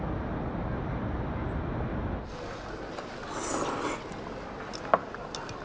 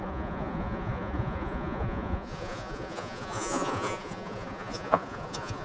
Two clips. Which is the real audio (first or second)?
first